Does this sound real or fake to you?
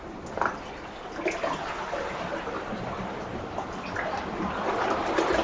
real